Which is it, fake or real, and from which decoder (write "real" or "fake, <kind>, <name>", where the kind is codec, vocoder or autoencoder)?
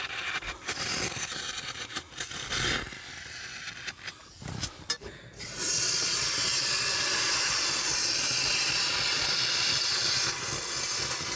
real